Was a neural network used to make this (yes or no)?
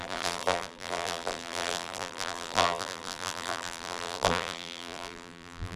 yes